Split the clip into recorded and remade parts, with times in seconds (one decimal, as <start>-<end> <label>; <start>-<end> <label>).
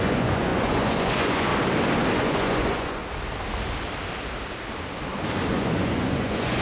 0.0-1.5 remade; 1.5-2.1 recorded; 2.1-3.0 remade; 3.0-5.5 recorded; 5.5-6.6 remade